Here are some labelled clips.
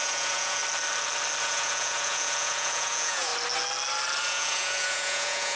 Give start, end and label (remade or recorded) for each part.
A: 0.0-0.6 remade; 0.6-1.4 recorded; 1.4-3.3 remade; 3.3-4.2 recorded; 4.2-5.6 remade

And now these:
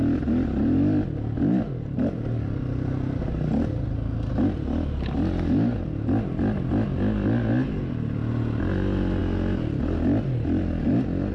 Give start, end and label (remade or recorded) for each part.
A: 0.0-11.3 recorded